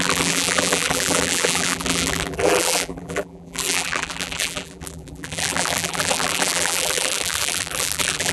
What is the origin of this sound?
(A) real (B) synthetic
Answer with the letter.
B